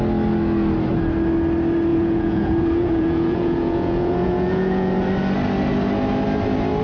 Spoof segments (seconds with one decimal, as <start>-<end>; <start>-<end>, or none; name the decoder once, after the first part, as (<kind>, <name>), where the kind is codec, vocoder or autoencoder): 1.9-4.9 (vocoder, Vocos)